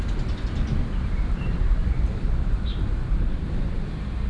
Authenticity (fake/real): real